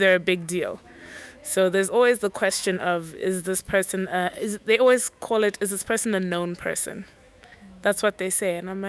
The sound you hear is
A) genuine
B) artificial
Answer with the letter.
B